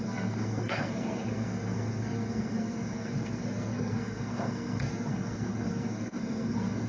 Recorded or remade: remade